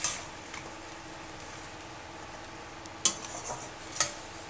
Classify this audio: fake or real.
real